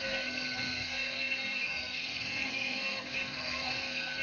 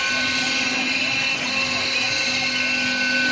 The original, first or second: second